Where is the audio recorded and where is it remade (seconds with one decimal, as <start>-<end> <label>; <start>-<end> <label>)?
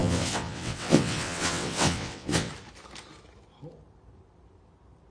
0.0-2.5 remade; 2.5-5.1 recorded